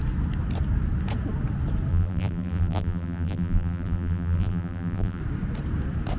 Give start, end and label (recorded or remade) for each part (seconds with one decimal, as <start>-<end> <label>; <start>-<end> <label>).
0.0-1.9 recorded; 1.9-5.2 remade; 5.2-6.2 recorded